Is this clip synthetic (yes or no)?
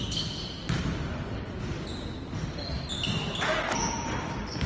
no